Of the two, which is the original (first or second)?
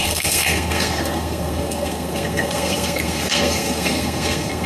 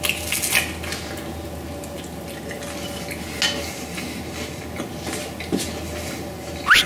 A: second